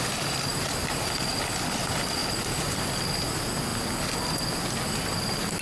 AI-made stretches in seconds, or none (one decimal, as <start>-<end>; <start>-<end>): 3.7-4.6